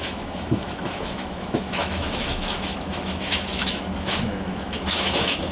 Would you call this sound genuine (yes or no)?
no